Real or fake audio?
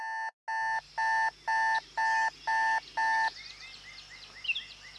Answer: real